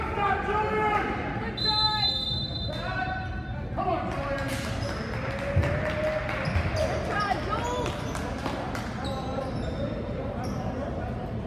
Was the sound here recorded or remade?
recorded